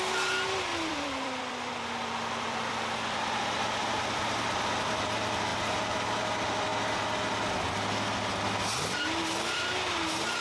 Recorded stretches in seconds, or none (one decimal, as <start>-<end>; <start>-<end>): 0.0-0.7; 4.9-10.4